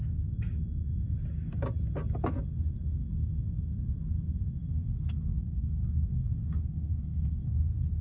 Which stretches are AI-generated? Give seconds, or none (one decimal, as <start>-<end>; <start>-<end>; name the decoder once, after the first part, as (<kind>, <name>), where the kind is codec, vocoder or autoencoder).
4.6-8.0 (codec, SNAC)